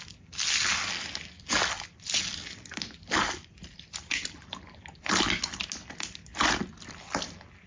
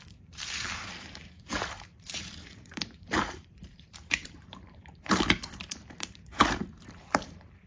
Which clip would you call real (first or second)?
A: first